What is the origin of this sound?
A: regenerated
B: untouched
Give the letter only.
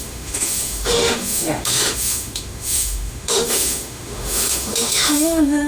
A